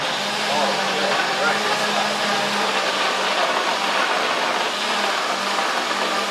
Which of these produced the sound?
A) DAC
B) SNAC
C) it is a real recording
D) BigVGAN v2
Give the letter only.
C